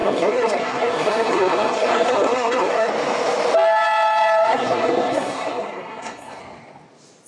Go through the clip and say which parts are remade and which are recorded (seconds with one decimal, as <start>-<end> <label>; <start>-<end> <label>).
0.0-2.9 remade; 2.9-4.5 recorded; 4.5-6.4 remade; 6.4-7.3 recorded